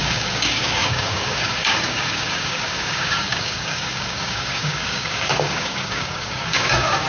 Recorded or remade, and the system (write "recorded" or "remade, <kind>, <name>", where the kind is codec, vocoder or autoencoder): remade, codec, DAC